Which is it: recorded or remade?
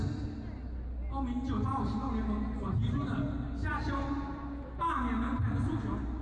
recorded